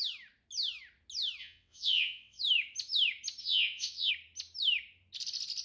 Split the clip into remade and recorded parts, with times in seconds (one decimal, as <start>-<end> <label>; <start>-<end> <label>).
0.0-1.4 recorded; 1.4-2.4 remade; 2.4-3.4 recorded; 3.4-4.1 remade; 4.1-5.6 recorded